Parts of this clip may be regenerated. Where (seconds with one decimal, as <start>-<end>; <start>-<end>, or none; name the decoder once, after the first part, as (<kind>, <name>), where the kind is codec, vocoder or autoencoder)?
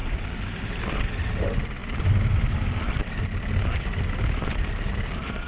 none